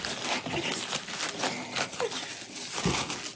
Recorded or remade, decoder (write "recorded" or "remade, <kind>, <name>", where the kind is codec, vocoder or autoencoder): recorded